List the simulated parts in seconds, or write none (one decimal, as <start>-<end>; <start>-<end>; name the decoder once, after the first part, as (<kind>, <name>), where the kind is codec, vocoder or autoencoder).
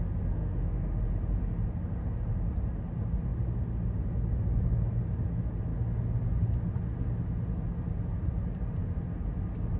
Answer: 0.4-1.0 (autoencoder, DAC-VAE)